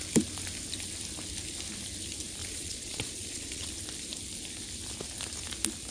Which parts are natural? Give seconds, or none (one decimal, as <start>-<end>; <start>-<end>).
0.0-2.4; 3.7-5.9

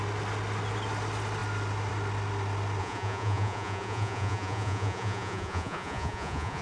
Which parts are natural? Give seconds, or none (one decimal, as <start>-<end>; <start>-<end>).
0.0-2.8

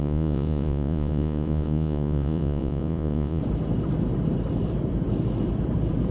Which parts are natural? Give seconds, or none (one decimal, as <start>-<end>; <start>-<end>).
3.4-6.1

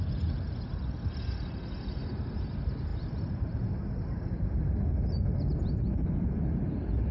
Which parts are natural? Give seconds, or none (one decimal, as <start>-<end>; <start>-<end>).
0.0-7.1